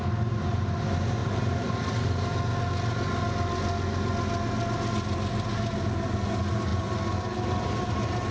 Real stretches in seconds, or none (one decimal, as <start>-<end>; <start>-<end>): 0.0-1.2; 1.9-8.3